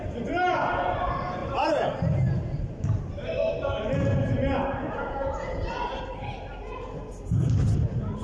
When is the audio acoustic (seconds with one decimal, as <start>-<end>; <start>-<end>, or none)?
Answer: 0.0-8.2